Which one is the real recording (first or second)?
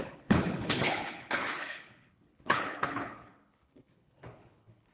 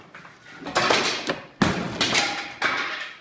second